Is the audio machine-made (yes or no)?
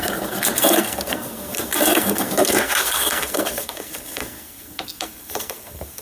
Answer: yes